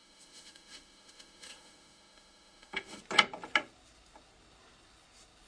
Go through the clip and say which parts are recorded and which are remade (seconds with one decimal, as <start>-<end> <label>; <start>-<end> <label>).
0.0-3.0 remade; 3.0-5.5 recorded